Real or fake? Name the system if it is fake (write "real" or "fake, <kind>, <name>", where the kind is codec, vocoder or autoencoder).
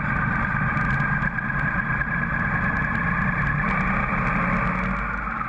real